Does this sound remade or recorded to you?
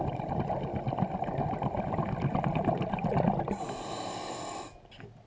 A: recorded